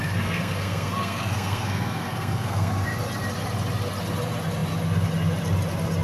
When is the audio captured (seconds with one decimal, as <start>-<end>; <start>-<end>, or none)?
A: 2.7-6.0